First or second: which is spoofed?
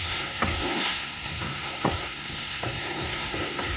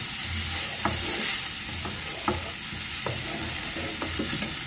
first